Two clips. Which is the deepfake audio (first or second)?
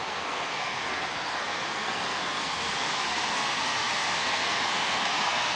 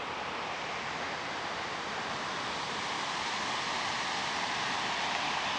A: first